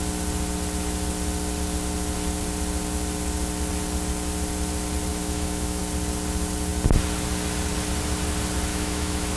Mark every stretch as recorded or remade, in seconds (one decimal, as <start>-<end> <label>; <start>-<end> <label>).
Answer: 0.0-5.1 recorded; 5.1-5.8 remade; 5.8-8.7 recorded; 8.7-9.4 remade